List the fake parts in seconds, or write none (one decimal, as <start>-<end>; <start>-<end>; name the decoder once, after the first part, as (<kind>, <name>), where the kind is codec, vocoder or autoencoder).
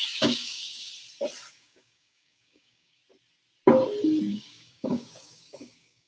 0.0-0.9 (codec, DAC); 1.5-3.0; 4.3-6.1